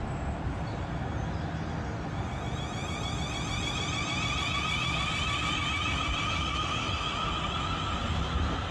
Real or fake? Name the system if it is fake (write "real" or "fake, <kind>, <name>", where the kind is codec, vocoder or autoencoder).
real